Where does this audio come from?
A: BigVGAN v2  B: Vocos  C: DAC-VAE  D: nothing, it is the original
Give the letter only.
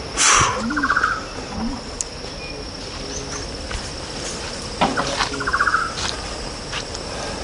D